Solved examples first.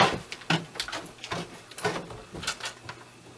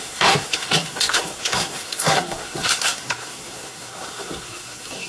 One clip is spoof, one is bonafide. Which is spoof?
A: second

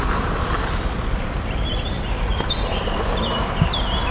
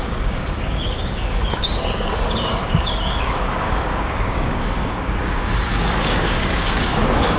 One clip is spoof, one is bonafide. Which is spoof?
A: second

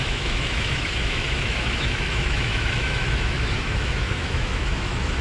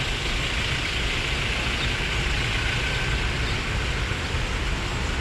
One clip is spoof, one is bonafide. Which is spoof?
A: first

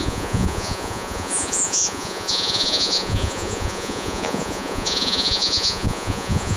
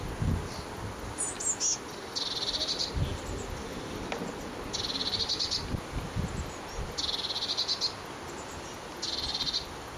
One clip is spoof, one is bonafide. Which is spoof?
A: first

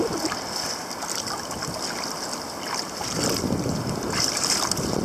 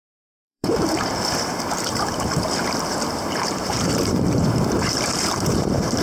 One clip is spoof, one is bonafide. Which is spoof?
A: second